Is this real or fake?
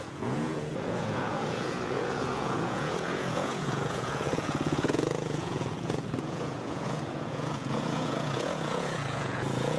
fake